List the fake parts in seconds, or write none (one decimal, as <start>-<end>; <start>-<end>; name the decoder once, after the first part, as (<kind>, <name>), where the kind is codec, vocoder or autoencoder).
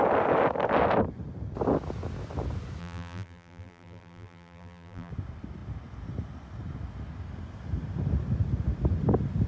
2.8-5.1 (vocoder, BigVGAN v2)